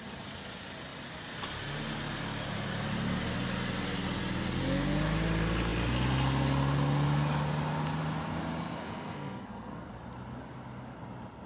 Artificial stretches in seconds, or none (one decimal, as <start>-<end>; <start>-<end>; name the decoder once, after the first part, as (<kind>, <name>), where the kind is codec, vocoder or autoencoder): 8.8-9.9 (codec, SNAC)